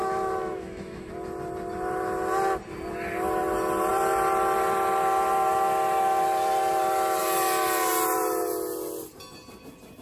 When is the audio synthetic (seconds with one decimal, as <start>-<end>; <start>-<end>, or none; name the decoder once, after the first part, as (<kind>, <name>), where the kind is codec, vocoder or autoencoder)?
0.0-1.1 (autoencoder, DAC-VAE)